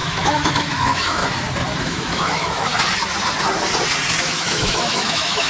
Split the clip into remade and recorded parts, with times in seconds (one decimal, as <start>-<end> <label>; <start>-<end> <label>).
0.0-1.2 remade; 1.2-1.8 recorded; 1.8-2.7 remade; 2.7-4.2 recorded; 4.2-5.5 remade